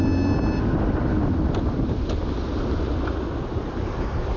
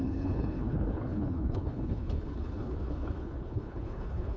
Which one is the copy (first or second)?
second